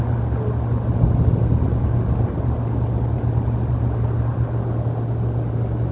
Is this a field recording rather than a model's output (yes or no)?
yes